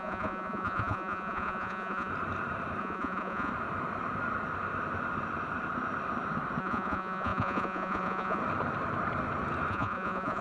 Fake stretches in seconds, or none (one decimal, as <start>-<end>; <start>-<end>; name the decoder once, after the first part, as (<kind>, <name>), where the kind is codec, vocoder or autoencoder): 0.0-2.1 (vocoder, Vocos); 2.8-3.5; 6.6-8.4; 9.7-10.4